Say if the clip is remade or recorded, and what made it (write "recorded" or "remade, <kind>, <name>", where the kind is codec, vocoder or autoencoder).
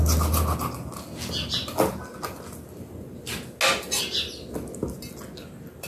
recorded